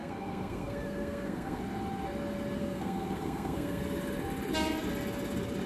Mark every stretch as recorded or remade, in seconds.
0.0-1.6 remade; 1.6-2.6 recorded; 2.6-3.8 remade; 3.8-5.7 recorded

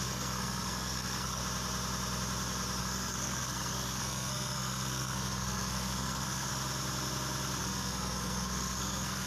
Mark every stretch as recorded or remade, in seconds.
0.0-1.4 remade; 1.4-2.8 recorded; 2.8-6.5 remade; 6.5-7.6 recorded; 7.6-9.3 remade

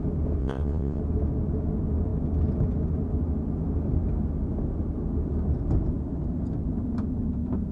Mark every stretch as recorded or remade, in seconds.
0.0-0.4 recorded; 0.4-1.0 remade; 1.0-7.7 recorded

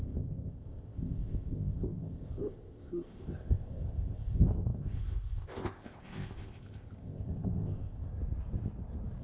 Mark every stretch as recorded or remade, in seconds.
0.0-8.1 remade; 8.1-9.2 recorded

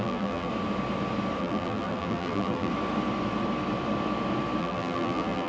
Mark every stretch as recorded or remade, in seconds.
0.0-0.5 remade; 0.5-1.4 recorded; 1.4-2.7 remade; 2.7-4.6 recorded; 4.6-5.5 remade